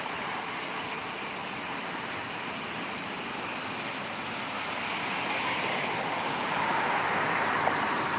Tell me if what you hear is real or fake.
real